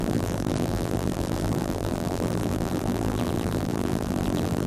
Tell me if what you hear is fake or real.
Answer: fake